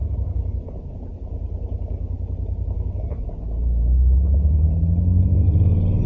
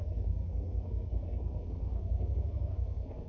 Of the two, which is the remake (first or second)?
second